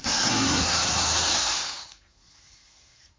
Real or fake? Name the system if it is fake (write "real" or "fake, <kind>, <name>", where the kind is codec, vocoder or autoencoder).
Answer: fake, codec, SNAC